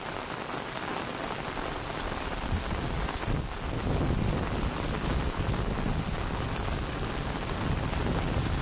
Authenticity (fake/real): real